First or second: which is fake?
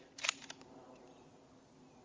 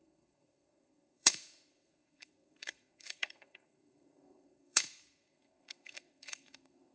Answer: second